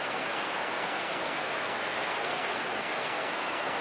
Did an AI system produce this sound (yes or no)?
yes